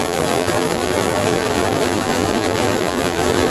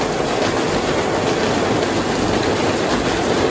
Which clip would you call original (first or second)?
second